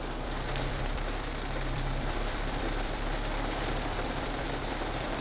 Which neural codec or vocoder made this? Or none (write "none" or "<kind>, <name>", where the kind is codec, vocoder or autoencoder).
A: vocoder, BigVGAN v2